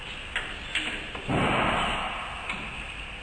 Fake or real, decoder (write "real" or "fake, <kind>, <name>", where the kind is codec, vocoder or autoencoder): real